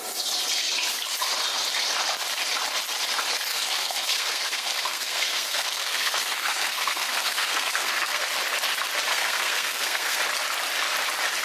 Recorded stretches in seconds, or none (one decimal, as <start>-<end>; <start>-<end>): 0.0-3.5; 8.3-9.1; 10.2-11.4